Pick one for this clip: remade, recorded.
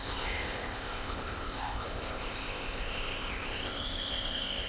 remade